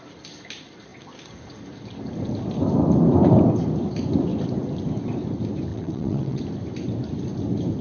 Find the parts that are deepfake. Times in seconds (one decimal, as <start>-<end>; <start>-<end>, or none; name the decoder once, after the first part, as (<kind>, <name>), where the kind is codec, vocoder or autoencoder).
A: 5.7-6.4 (vocoder, WaveNeXt)